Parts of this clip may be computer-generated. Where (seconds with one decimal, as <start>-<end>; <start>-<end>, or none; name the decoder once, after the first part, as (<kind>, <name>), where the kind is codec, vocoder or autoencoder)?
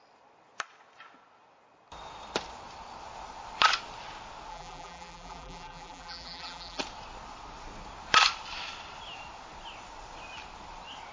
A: 4.5-6.8 (vocoder, BigVGAN v2)